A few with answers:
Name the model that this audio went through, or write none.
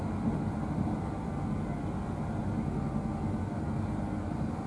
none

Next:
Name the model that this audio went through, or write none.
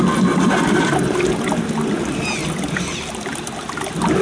none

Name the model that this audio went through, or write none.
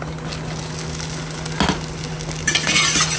none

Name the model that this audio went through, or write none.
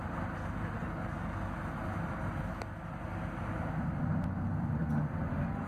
none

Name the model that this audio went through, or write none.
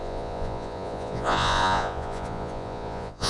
vocoder, Vocos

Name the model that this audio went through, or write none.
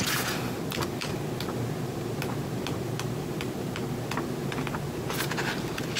none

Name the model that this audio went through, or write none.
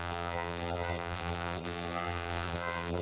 vocoder, BigVGAN v2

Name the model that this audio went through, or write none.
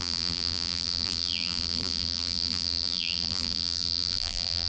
vocoder, BigVGAN v2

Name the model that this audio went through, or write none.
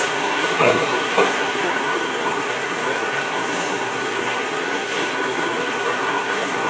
codec, SNAC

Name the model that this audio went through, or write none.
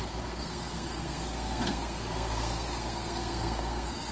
codec, SNAC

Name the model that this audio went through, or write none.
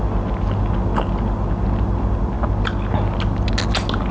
none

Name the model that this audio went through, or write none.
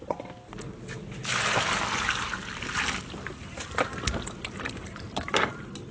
none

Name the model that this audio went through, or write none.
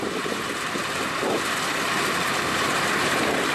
none